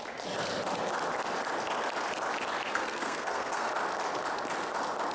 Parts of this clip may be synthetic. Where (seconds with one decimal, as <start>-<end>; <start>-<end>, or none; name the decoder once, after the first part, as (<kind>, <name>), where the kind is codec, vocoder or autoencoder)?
2.7-3.7 (codec, SNAC)